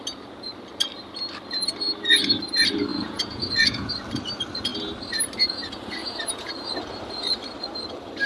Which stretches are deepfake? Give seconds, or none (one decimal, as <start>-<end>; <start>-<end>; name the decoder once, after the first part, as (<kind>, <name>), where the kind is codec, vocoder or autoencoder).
2.9-3.9 (vocoder, Vocos); 6.0-6.5